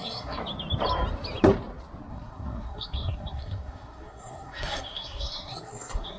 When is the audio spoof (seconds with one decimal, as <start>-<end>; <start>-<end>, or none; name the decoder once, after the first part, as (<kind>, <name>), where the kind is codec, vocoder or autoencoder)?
0.0-0.4 (codec, SNAC); 2.1-6.2

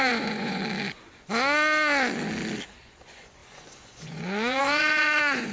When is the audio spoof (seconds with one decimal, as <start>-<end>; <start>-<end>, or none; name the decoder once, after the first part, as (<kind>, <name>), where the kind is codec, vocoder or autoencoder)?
0.0-0.6 (vocoder, Vocos); 2.8-5.5

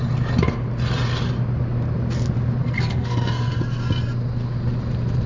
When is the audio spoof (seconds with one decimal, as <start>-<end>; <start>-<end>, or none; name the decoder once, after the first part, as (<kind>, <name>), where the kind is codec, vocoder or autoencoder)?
2.6-3.6 (codec, SNAC)

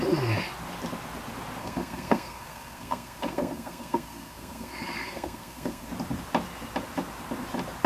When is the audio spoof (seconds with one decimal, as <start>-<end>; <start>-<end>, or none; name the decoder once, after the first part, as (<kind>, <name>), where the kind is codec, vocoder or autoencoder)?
1.6-5.9 (codec, SNAC)

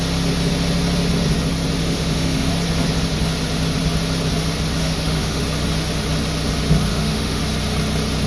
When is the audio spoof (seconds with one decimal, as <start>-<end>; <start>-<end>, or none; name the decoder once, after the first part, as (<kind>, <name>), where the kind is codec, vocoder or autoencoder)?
1.8-2.5 (autoencoder, DAC-VAE); 4.8-5.4; 6.9-7.4

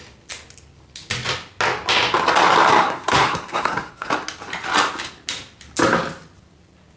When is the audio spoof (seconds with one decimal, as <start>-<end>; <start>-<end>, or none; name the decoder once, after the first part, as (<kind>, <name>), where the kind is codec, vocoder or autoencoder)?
2.8-4.1 (codec, SNAC)

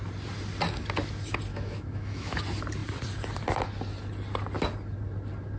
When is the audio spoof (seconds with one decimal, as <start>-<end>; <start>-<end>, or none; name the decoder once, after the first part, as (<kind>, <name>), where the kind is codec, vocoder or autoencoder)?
1.5-2.4 (autoencoder, DAC-VAE)